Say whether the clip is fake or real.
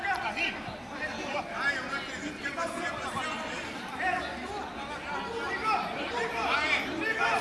real